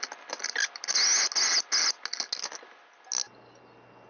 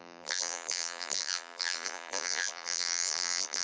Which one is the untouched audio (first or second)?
first